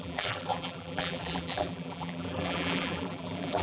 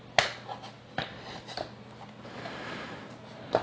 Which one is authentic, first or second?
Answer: second